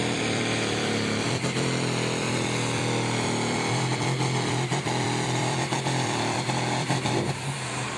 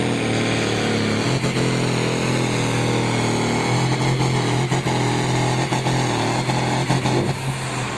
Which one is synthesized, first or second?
first